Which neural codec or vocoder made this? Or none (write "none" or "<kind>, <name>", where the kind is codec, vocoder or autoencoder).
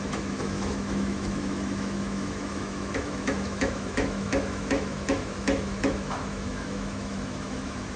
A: autoencoder, DAC-VAE